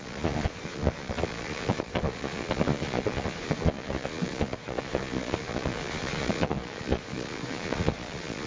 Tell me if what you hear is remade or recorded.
remade